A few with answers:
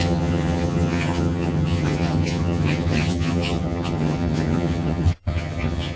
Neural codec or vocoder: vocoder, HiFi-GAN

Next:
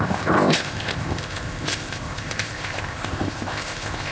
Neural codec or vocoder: codec, ZipCodec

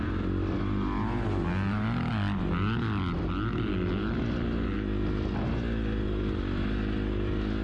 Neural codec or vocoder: none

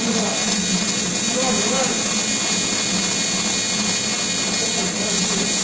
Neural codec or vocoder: none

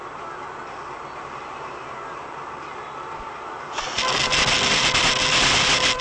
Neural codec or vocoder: vocoder, BigVGAN v2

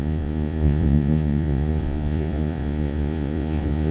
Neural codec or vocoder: vocoder, Vocos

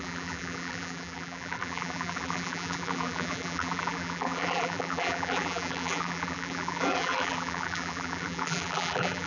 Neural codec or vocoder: vocoder, BigVGAN v2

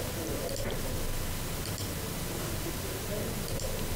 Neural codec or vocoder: none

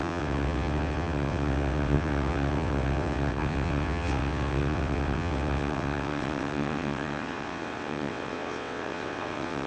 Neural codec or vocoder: vocoder, WaveNeXt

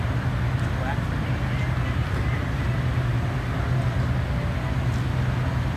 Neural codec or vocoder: none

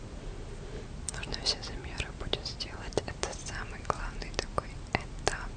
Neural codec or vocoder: none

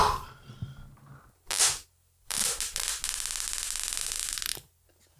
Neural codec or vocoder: none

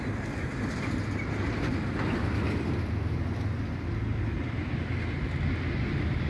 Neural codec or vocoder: none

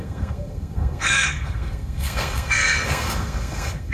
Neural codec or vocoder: codec, SNAC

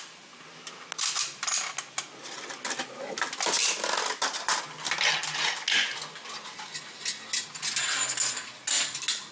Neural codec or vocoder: none